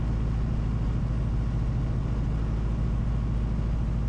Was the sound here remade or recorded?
recorded